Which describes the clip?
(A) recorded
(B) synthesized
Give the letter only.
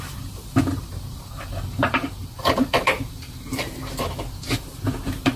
B